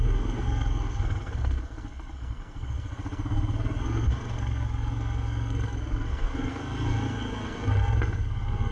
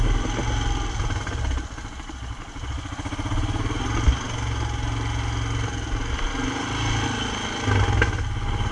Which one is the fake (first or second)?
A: first